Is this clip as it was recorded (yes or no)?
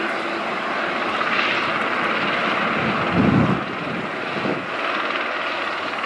yes